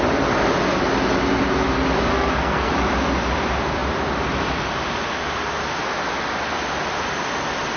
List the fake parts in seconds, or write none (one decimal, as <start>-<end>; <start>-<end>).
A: 2.1-2.7